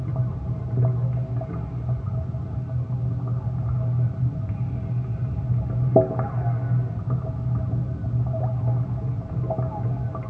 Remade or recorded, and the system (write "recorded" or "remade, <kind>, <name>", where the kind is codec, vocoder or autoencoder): recorded